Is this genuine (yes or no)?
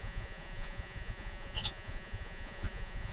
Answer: no